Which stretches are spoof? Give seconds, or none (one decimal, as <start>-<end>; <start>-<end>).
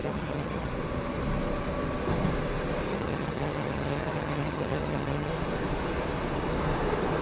0.0-0.7; 2.9-5.3